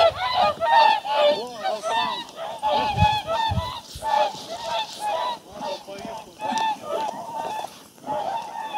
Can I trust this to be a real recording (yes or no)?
no